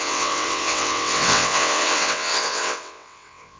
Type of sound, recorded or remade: remade